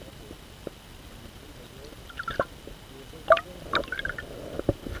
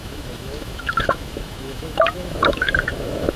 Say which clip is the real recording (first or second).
first